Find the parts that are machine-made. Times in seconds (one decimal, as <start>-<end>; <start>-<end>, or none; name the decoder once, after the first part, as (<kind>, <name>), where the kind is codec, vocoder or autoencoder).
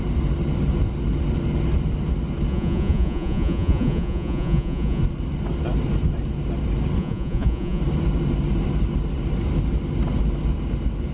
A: 2.5-5.0 (vocoder, Vocos); 7.0-7.8